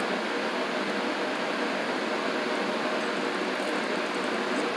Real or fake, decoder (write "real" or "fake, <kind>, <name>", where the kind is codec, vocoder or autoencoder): real